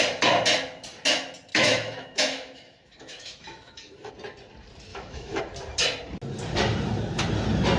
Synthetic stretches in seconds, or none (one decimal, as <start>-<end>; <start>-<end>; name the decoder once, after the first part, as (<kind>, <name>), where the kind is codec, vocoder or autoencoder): 1.5-4.1 (autoencoder, DAC-VAE); 4.9-5.4